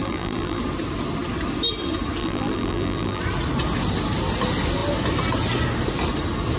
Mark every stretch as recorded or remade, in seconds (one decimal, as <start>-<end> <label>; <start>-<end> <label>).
0.0-0.6 remade; 0.6-2.2 recorded; 2.2-3.2 remade; 3.2-6.6 recorded